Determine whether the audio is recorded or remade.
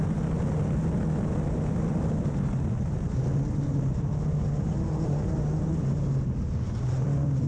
recorded